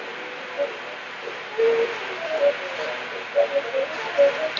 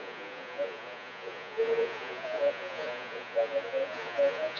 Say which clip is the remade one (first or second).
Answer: second